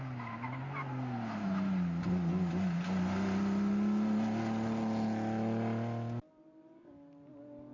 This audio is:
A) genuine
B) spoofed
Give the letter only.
A